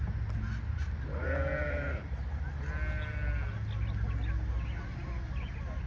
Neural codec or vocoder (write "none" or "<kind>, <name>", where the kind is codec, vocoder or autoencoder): none